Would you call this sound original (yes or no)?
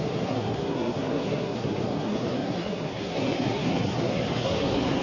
no